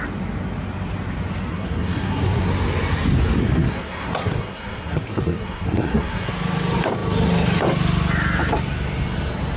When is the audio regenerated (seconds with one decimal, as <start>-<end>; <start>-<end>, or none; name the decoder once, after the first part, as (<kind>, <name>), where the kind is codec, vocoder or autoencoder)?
1.5-2.5 (codec, SNAC); 3.4-6.3